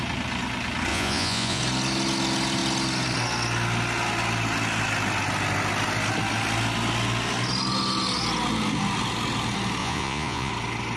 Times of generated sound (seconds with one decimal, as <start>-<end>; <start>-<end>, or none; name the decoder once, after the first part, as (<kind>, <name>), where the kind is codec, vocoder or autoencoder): 0.9-1.6 (vocoder, Vocos); 9.8-10.5

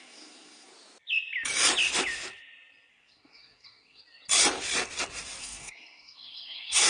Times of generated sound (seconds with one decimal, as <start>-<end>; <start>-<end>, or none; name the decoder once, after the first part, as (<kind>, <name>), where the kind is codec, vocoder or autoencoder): 0.0-0.7 (codec, SNAC); 2.9-4.0; 5.4-6.9

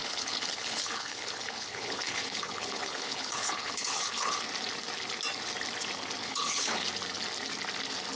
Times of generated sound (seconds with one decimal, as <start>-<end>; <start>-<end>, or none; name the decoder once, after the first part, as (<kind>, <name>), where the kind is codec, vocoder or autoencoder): 0.0-4.4 (codec, HILCodec); 6.2-6.9

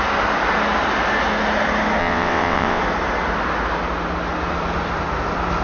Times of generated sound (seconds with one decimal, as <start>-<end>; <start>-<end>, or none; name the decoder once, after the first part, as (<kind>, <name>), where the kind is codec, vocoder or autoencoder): 2.0-2.8 (vocoder, WaveNeXt)